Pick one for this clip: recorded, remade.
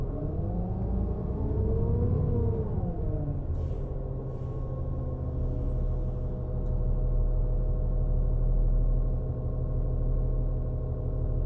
recorded